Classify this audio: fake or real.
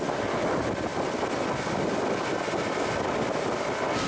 real